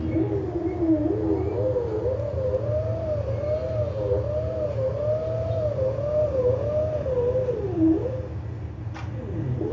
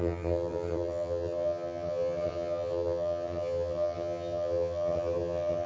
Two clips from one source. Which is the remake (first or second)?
second